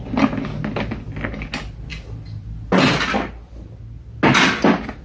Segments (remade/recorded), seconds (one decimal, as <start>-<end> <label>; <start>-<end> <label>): 0.0-5.0 recorded